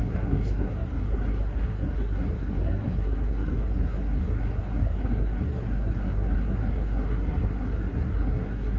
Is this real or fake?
fake